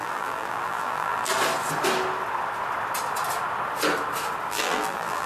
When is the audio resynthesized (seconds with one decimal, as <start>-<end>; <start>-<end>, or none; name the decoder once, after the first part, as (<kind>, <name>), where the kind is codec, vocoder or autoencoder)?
0.0-1.3 (vocoder, BigVGAN v2); 4.5-5.3